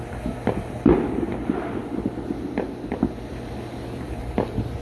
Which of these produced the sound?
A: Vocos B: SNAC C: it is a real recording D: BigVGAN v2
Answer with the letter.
D